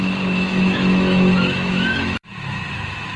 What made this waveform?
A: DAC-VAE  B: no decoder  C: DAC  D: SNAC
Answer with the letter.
A